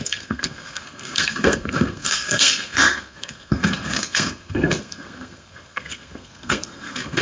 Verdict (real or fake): fake